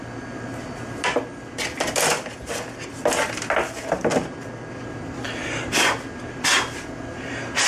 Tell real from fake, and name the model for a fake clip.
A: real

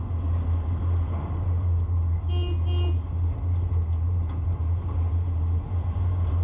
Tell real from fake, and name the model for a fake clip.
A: real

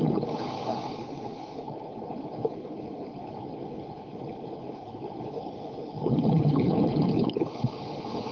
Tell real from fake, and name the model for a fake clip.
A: fake, codec, HILCodec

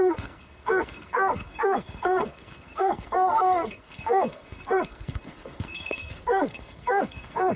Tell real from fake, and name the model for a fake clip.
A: fake, codec, SNAC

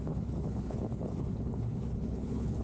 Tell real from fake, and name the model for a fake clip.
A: fake, codec, HILCodec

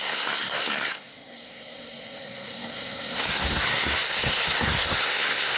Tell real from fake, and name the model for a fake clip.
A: fake, codec, SNAC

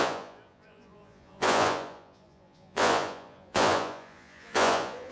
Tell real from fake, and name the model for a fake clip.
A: fake, vocoder, Vocos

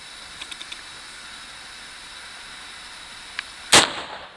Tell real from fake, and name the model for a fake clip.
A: real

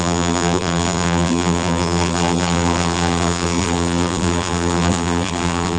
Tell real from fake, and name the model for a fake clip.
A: fake, vocoder, BigVGAN v2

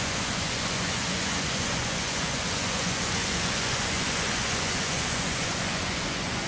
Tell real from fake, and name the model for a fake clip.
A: fake, vocoder, Vocos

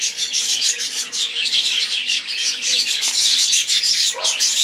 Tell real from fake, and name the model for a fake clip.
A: fake, codec, DAC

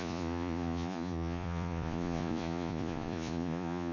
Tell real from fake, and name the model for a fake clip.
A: fake, vocoder, Vocos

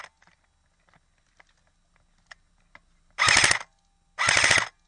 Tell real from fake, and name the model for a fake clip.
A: real